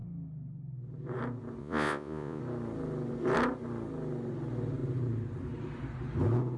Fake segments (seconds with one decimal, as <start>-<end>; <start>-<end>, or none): 1.6-2.4